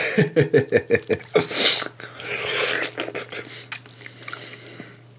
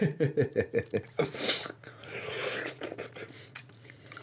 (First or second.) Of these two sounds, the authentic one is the first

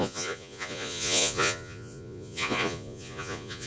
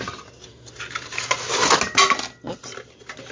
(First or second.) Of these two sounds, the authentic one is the second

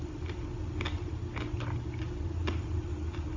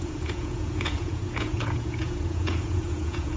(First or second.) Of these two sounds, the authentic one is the first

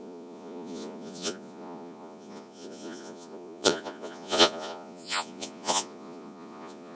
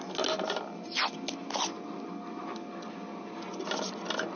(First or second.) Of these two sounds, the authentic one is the second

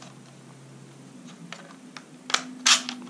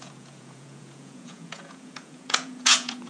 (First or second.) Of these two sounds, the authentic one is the first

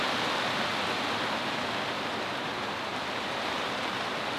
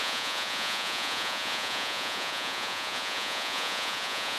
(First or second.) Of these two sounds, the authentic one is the first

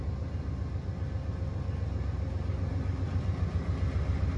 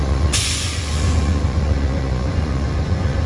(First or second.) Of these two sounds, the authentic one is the first